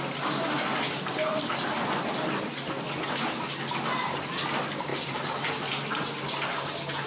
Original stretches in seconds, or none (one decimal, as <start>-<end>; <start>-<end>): 0.0-7.1